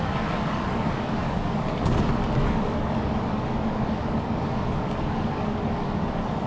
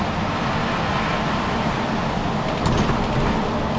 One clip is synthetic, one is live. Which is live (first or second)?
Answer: second